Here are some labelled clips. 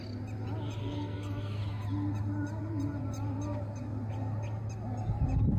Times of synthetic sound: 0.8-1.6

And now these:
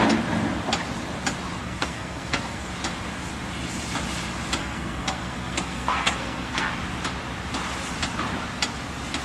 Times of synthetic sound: 1.6-2.7; 4.6-6.7

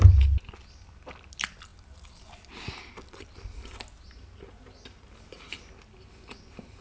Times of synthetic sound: none

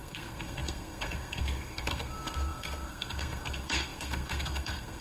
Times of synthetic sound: 0.0-5.0